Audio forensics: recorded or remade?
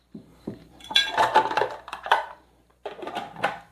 remade